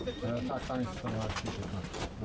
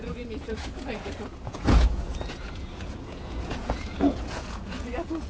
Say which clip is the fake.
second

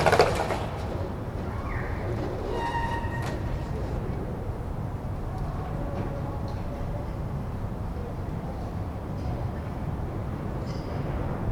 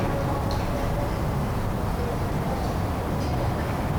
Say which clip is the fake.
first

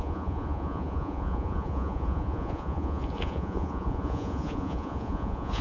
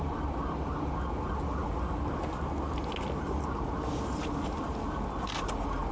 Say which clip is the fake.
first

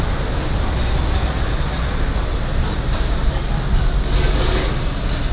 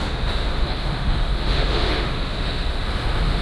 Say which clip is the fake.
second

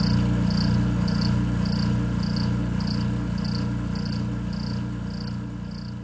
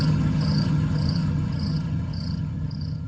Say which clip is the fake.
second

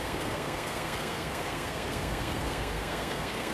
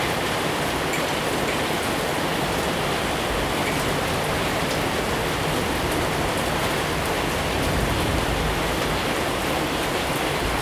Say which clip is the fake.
first